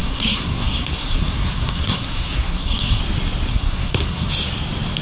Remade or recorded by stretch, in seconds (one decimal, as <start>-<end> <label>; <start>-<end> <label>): 0.0-3.0 remade; 3.0-3.5 recorded; 3.5-4.3 remade; 4.3-5.0 recorded